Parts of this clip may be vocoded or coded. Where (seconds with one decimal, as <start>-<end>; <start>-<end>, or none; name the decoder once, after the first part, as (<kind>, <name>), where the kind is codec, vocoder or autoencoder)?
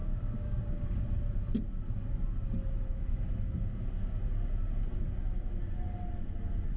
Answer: 0.0-1.0 (codec, DAC)